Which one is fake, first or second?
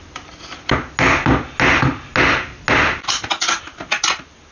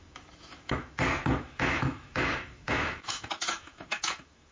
second